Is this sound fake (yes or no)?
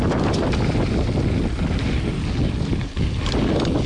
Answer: no